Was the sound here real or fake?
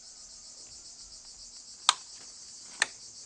real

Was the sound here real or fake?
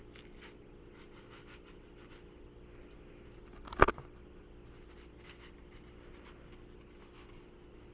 real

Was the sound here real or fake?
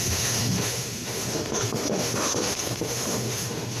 fake